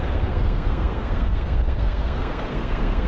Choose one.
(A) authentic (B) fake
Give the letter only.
B